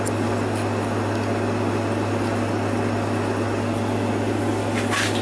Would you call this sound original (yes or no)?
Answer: yes